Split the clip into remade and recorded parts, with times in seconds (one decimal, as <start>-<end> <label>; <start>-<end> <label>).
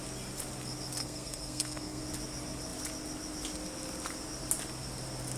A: 0.0-1.0 recorded; 1.0-2.0 remade; 2.0-5.4 recorded